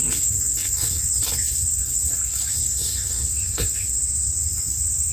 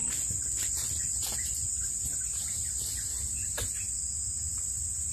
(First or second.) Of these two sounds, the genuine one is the second